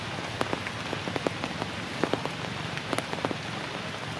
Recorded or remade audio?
recorded